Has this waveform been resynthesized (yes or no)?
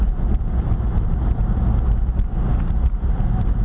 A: yes